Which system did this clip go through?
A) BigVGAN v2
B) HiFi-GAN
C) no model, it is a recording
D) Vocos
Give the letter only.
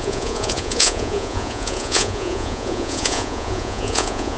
D